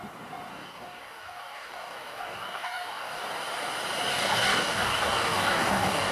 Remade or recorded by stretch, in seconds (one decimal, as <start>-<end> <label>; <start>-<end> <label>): 0.0-0.5 recorded; 0.5-3.2 remade; 3.2-4.1 recorded; 4.1-6.1 remade